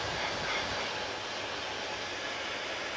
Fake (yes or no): no